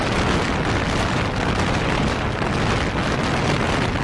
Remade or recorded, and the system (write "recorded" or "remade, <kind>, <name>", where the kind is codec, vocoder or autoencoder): recorded